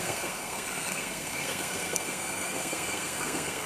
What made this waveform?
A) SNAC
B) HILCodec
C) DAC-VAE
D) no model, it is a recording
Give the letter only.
A